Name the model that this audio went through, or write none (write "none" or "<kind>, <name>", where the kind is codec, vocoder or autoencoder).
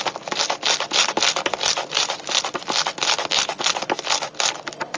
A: none